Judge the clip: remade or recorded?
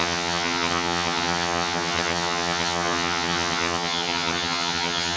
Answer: remade